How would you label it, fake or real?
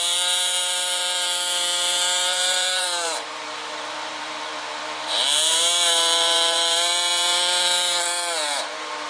fake